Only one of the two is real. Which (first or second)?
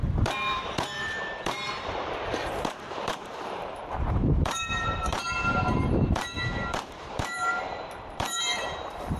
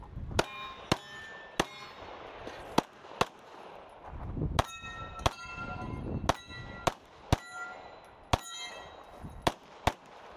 second